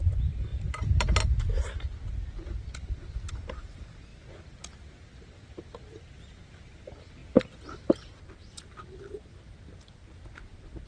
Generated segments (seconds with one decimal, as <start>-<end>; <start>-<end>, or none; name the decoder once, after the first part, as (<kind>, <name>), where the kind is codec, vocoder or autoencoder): none